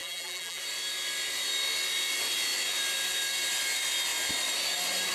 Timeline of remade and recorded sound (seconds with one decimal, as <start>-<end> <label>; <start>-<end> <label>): 0.0-0.6 remade; 0.6-5.1 recorded